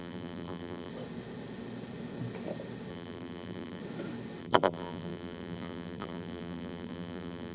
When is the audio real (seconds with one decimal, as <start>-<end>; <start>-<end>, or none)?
0.9-2.9; 3.8-4.4